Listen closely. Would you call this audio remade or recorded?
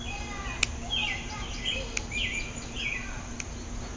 recorded